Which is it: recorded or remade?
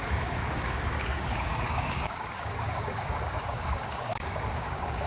remade